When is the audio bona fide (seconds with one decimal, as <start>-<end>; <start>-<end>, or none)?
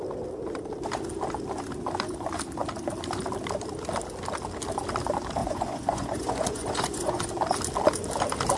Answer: 0.0-5.4; 7.2-8.6